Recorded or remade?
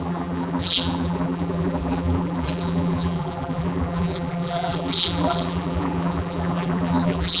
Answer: remade